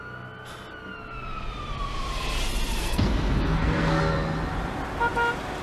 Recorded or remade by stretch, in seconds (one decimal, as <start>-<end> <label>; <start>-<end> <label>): 0.0-2.8 recorded; 2.8-4.0 remade; 4.0-5.6 recorded